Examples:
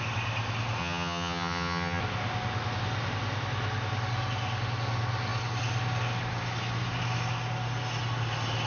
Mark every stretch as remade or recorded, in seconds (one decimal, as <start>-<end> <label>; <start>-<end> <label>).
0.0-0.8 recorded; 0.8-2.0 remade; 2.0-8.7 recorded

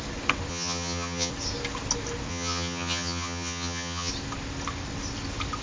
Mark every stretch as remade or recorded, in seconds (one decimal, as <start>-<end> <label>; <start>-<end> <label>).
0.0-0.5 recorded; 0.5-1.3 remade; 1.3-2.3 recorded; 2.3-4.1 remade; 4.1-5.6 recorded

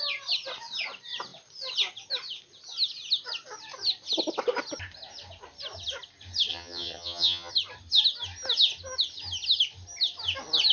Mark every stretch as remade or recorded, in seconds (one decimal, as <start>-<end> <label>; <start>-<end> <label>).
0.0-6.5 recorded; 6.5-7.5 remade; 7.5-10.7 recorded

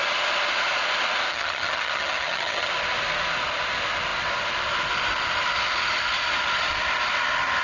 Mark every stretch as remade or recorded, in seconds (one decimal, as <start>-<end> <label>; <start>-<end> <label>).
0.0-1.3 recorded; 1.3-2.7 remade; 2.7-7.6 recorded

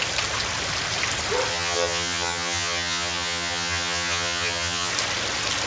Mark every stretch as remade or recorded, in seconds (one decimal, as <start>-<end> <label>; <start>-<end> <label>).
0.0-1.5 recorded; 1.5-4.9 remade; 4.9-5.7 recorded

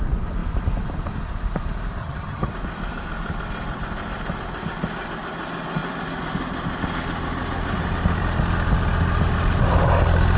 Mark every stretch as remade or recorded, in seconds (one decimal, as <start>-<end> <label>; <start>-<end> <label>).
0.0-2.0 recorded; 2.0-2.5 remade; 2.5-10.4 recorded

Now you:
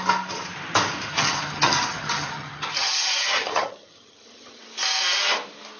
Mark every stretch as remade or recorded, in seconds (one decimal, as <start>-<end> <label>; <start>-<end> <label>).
0.0-1.1 recorded; 1.1-4.6 remade; 4.6-5.8 recorded

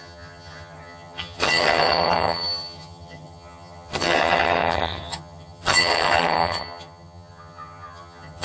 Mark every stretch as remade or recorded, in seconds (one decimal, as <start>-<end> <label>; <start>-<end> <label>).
0.0-8.4 remade